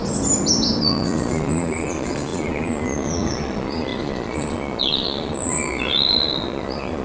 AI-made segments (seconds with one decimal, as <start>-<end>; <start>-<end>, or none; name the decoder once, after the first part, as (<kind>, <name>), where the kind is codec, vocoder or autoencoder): 0.8-7.0 (vocoder, Vocos)